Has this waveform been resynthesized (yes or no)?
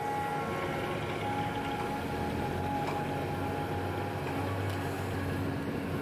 no